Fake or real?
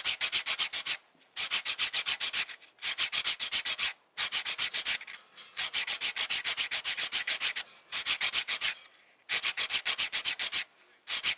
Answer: real